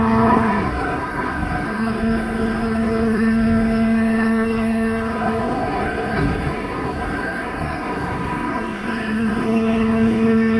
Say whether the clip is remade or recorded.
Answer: remade